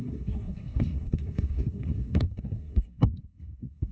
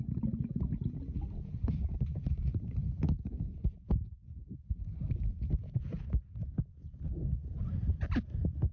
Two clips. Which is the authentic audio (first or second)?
second